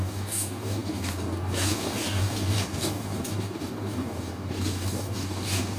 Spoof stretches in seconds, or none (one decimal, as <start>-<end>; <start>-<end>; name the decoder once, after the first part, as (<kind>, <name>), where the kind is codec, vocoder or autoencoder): 0.0-5.8 (codec, DAC)